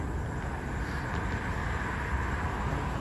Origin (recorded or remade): recorded